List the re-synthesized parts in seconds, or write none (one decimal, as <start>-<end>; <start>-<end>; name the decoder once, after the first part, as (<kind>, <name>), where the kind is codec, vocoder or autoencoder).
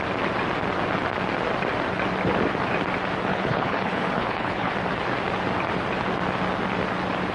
3.3-4.7 (codec, HILCodec)